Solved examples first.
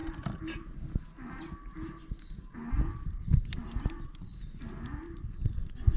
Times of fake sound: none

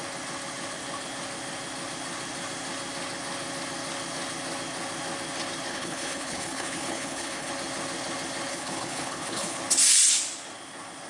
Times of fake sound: 5.7-7.5; 8.5-9.6

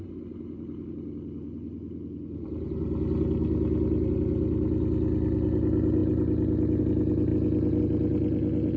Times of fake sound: none